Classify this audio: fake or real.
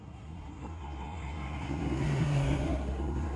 fake